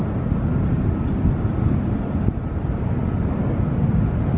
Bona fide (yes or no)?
yes